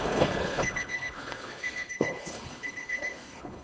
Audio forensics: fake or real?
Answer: fake